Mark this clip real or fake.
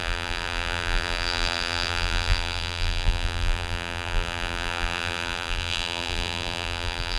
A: fake